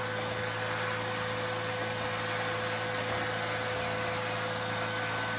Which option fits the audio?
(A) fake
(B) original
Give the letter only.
B